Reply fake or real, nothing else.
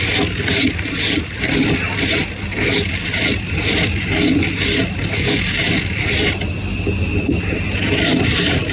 real